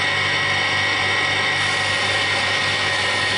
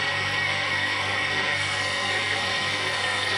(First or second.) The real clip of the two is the first